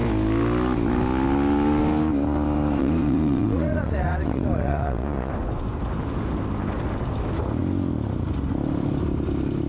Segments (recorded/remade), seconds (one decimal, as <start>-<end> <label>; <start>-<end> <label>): 0.0-2.8 recorded; 2.8-5.3 remade; 5.3-9.7 recorded